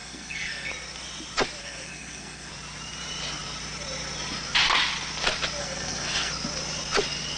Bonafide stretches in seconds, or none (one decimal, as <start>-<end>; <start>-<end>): 0.7-1.6; 2.5-5.6; 6.3-7.4

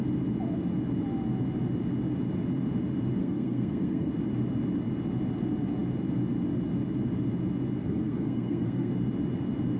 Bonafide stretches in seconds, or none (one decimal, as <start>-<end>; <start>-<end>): 0.0-3.2; 4.1-7.8; 8.9-9.8

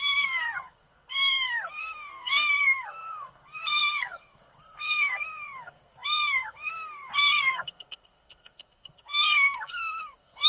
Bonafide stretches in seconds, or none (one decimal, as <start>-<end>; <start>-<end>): none

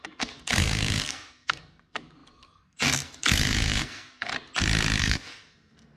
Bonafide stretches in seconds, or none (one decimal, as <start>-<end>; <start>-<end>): 4.3-5.0

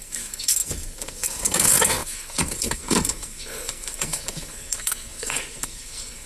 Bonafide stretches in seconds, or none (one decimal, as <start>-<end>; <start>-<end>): none